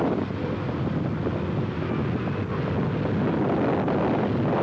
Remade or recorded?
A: recorded